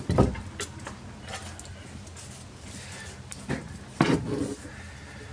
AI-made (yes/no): no